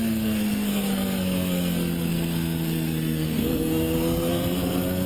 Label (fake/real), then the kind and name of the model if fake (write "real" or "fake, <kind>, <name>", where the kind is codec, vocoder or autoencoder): fake, codec, SNAC